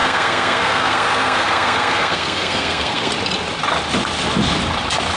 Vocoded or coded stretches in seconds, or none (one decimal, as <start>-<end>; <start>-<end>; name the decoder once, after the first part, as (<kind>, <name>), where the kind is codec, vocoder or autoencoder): 0.0-3.1 (codec, SNAC)